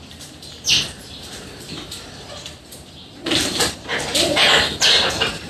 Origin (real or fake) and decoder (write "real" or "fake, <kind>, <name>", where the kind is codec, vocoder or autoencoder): fake, vocoder, BigVGAN v2